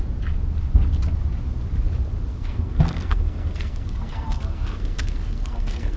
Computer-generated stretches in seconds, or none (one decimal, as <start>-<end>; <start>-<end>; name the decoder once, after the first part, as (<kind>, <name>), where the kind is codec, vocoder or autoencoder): 2.3-6.0 (codec, SNAC)